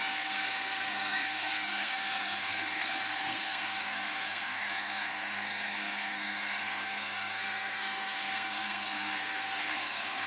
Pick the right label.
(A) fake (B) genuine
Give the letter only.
A